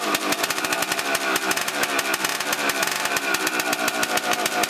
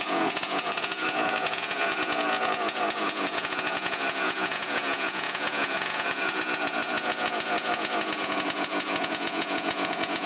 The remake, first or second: second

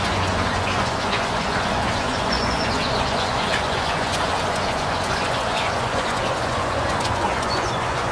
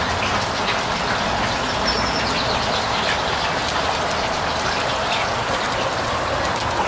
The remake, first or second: first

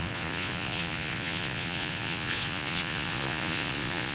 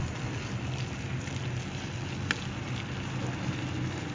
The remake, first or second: first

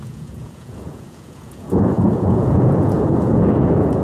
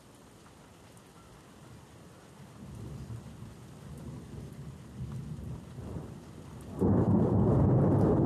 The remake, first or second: first